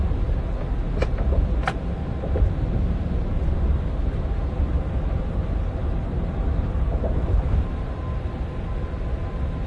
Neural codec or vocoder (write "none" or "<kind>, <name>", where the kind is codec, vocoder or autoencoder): none